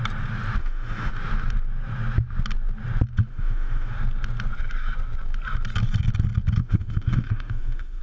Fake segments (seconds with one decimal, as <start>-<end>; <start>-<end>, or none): 0.6-1.1; 3.3-3.9; 6.6-8.0